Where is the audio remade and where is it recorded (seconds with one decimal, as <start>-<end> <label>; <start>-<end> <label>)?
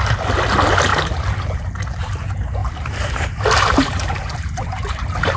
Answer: 0.0-0.9 recorded; 0.9-1.7 remade; 1.7-2.6 recorded; 2.6-4.7 remade; 4.7-5.4 recorded